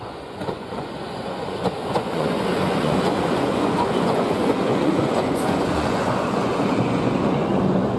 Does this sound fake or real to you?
fake